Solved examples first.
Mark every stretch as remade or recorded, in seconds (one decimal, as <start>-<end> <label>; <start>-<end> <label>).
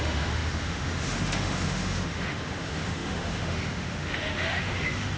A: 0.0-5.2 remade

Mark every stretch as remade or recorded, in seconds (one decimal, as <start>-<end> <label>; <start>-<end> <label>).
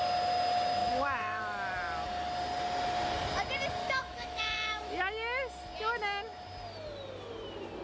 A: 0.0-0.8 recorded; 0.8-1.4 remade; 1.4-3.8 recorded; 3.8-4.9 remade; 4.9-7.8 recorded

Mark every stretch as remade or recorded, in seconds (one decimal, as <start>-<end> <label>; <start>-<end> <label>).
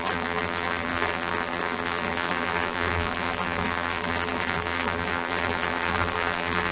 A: 0.0-6.7 remade